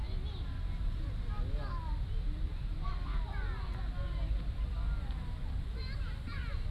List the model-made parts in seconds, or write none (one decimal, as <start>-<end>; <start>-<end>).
none